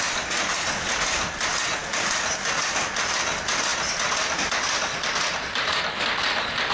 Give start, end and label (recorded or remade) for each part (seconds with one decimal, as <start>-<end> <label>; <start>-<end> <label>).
0.0-6.7 recorded